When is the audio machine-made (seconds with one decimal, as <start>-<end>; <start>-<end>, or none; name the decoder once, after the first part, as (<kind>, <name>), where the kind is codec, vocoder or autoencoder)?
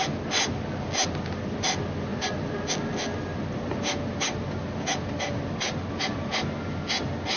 none